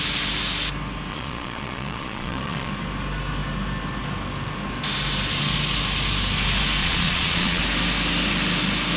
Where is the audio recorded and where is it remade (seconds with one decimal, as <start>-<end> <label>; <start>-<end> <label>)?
0.0-1.1 recorded; 1.1-2.7 remade; 2.7-6.8 recorded; 6.8-7.6 remade; 7.6-9.0 recorded